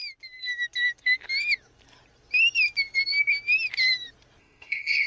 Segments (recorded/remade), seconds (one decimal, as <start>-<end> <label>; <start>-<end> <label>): 0.0-4.4 recorded; 4.4-5.1 remade